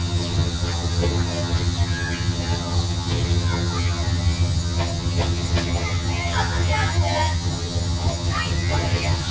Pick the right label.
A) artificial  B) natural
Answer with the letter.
A